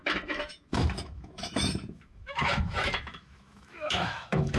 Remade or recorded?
remade